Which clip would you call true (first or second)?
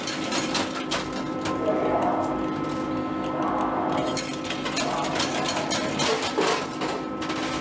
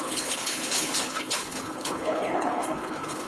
first